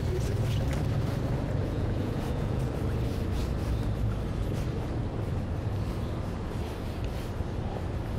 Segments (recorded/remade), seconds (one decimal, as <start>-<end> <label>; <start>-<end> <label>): 0.0-1.6 recorded; 1.6-2.7 remade; 2.7-8.2 recorded